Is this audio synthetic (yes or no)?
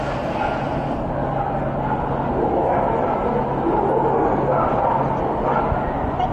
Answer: no